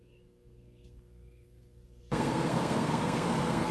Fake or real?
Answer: fake